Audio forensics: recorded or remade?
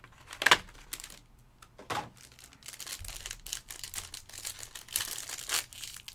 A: recorded